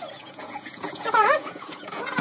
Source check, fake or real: fake